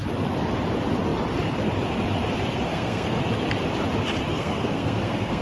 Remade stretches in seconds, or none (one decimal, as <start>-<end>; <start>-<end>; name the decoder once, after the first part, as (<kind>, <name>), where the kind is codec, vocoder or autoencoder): 2.7-3.2 (codec, SNAC); 4.3-5.4